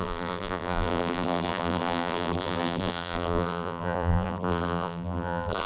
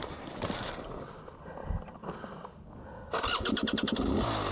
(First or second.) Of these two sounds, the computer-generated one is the first